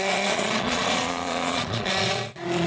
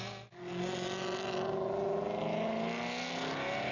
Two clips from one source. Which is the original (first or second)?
second